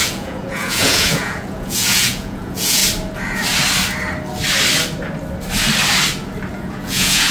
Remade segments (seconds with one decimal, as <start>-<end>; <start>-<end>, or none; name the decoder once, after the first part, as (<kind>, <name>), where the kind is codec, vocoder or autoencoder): 0.0-2.8 (vocoder, Vocos); 6.5-7.3